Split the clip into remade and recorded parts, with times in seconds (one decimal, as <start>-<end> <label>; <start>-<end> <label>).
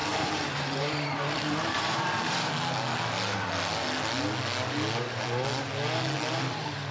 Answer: 0.0-2.5 remade; 2.5-6.9 recorded